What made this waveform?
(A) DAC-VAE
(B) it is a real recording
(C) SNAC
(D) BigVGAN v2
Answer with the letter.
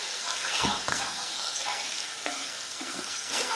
C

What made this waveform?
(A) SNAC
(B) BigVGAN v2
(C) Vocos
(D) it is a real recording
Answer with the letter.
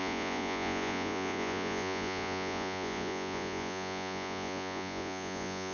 C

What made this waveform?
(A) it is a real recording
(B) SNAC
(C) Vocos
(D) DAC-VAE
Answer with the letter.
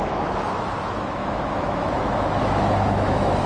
D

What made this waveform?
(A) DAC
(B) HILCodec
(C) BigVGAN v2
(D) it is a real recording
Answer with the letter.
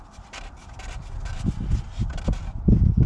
D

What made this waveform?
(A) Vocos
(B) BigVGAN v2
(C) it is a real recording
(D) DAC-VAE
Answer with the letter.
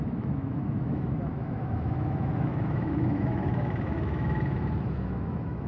D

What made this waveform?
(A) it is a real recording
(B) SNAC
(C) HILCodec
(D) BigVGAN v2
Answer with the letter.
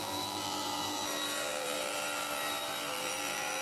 D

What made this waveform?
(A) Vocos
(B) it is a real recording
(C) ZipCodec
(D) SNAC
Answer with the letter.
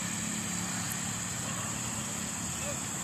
B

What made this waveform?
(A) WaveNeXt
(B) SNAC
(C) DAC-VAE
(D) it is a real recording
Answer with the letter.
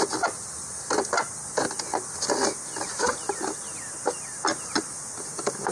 D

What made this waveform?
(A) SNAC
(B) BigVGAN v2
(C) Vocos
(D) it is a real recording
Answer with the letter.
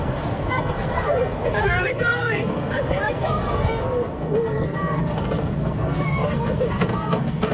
A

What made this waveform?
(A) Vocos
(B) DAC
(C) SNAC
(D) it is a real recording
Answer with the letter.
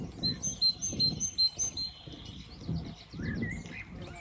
D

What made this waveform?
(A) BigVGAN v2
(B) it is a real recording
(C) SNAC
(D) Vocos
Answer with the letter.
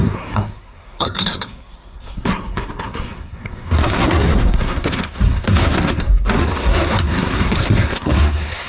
C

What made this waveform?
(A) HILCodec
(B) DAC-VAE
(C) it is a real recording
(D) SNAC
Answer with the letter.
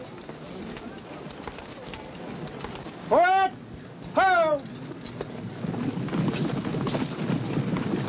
C